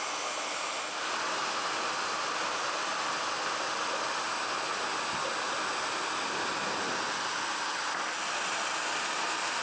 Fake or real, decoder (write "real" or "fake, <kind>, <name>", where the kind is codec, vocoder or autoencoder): real